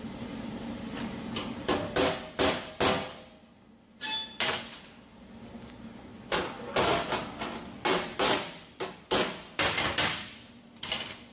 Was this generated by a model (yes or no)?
no